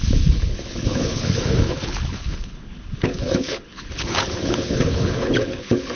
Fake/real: fake